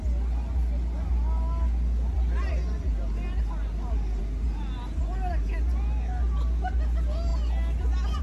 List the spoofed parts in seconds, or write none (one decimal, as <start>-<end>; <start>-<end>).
none